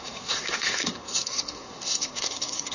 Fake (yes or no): yes